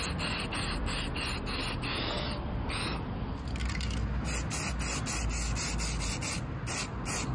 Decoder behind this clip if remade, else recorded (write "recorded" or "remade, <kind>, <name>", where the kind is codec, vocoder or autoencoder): recorded